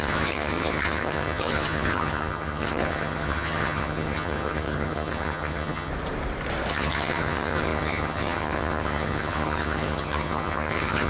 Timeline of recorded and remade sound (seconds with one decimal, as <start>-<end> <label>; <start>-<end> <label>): 0.0-5.9 remade; 5.9-6.7 recorded; 6.7-11.1 remade